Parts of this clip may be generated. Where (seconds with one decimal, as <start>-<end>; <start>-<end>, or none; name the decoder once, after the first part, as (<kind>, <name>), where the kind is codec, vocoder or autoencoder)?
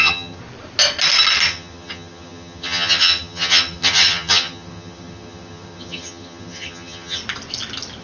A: 0.0-0.4 (vocoder, HiFi-GAN); 1.5-7.2